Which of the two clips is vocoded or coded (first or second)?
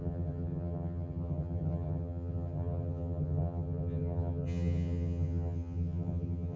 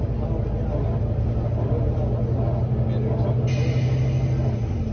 first